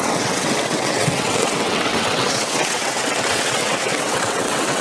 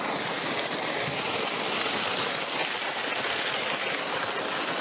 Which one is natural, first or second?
second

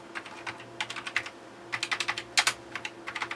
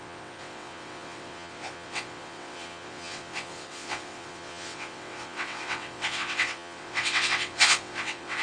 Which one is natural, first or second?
first